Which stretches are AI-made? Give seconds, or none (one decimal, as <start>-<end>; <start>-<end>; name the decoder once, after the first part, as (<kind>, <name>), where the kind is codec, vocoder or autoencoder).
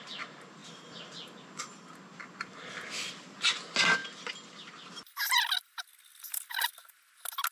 none